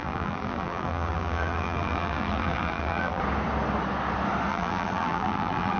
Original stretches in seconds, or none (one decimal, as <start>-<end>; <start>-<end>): 3.2-4.5